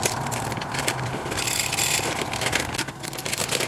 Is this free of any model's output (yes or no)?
yes